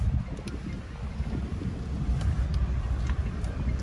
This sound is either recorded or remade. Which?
recorded